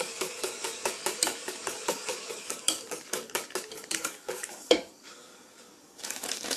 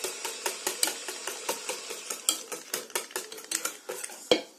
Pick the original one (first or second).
second